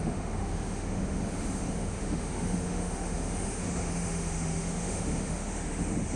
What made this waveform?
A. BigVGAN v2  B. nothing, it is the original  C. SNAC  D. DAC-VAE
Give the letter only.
D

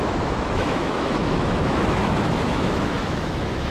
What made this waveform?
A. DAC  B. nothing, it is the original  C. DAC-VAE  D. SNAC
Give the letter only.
C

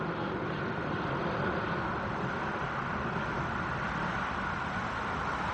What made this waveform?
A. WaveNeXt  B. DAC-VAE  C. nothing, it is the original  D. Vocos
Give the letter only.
C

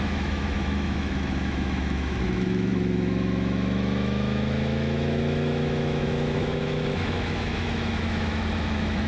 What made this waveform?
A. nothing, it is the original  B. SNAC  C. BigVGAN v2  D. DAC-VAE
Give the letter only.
D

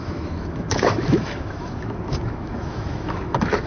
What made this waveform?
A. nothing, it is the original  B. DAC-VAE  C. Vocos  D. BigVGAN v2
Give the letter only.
B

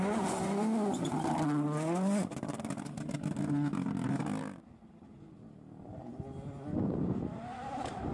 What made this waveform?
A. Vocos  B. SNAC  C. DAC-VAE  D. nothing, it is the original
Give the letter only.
D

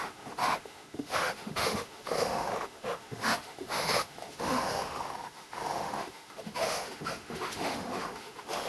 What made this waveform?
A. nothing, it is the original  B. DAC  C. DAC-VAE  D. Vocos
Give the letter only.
C